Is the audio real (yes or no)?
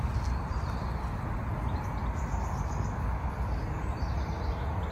yes